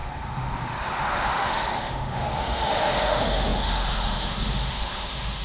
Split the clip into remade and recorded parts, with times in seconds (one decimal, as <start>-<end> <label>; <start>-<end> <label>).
0.0-5.4 remade